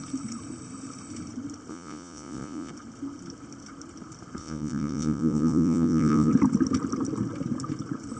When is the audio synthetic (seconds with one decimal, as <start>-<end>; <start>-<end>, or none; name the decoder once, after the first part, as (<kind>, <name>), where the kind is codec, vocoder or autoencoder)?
1.7-2.7 (vocoder, Vocos); 4.4-6.3